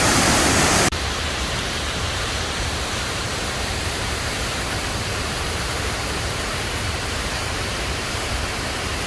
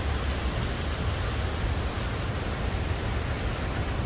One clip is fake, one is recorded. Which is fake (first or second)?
first